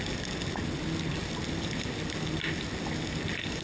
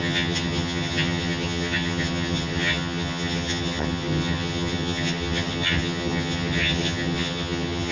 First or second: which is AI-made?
second